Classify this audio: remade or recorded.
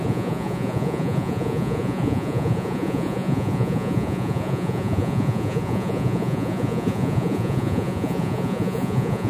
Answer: remade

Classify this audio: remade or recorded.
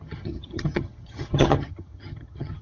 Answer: remade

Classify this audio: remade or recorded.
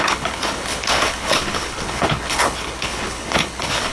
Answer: remade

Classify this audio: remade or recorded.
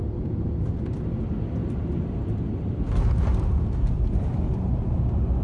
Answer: recorded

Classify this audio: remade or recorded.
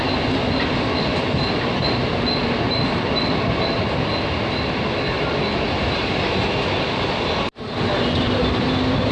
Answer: recorded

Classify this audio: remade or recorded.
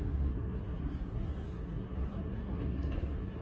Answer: remade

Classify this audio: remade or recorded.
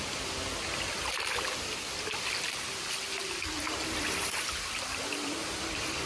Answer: recorded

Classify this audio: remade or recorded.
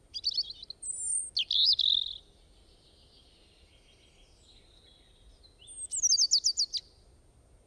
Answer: recorded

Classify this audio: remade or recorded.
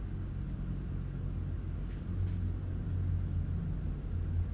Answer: recorded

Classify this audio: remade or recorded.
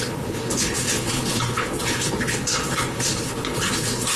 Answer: remade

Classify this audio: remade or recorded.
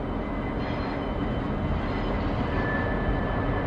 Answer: recorded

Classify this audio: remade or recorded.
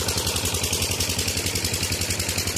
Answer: recorded